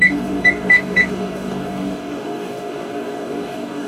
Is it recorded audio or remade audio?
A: remade